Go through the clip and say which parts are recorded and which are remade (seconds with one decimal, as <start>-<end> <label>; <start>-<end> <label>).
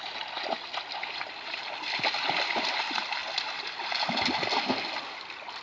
0.0-5.6 recorded